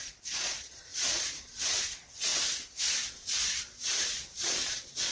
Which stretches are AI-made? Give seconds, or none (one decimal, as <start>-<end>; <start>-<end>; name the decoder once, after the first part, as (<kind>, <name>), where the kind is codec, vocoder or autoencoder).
0.0-2.3 (vocoder, Vocos); 2.9-5.1